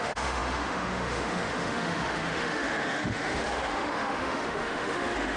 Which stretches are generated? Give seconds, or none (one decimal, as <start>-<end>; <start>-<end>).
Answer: 0.0-5.4